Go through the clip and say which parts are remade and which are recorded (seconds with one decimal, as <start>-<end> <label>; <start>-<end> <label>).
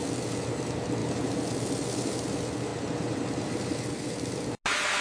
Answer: 0.0-5.0 recorded